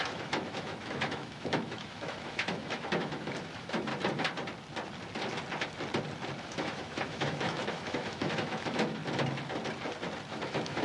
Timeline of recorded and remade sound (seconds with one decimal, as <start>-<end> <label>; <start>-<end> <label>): 0.0-3.9 remade; 3.9-6.4 recorded; 6.4-9.0 remade; 9.0-10.3 recorded; 10.3-10.8 remade